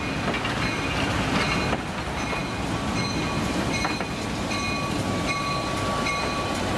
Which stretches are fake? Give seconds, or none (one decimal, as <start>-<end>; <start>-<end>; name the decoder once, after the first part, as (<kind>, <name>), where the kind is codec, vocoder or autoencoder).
none